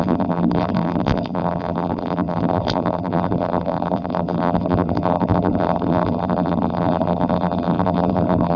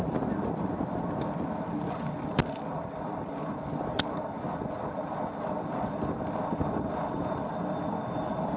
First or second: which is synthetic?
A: first